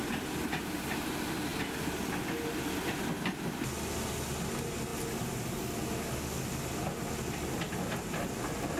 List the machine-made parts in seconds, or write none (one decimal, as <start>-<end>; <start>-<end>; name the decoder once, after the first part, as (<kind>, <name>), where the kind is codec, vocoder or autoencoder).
none

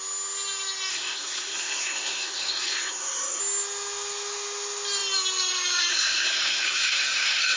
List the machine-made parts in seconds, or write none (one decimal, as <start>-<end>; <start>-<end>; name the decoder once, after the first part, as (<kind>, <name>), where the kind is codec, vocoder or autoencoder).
0.9-3.4 (codec, SNAC); 5.9-7.6